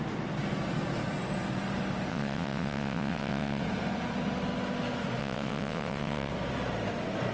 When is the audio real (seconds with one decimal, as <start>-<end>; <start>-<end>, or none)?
0.0-2.1; 3.6-5.2; 6.3-7.3